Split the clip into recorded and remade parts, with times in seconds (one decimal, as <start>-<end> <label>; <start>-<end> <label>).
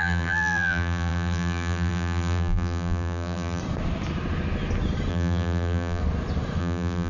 0.0-3.6 remade; 3.6-5.1 recorded; 5.1-6.0 remade; 6.0-6.6 recorded; 6.6-7.1 remade